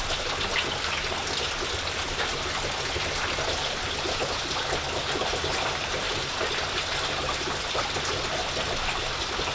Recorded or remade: recorded